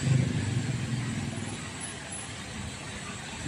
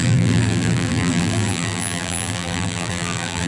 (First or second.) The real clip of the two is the first